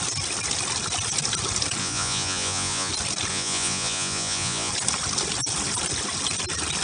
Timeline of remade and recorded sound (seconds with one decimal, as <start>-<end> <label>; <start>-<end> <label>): 0.0-1.8 recorded; 1.8-2.9 remade; 2.9-3.3 recorded; 3.3-4.7 remade; 4.7-6.8 recorded